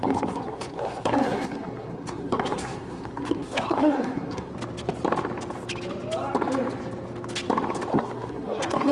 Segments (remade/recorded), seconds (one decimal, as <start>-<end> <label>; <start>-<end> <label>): 0.0-4.5 remade; 4.5-7.9 recorded; 7.9-8.9 remade